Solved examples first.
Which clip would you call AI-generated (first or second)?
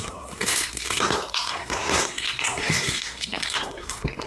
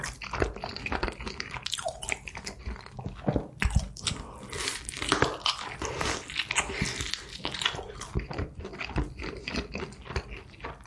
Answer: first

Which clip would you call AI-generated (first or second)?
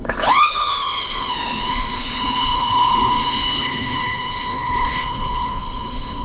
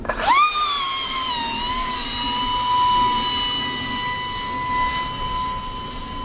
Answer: first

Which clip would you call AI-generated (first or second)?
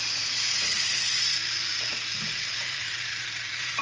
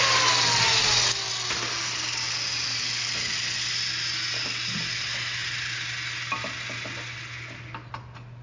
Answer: first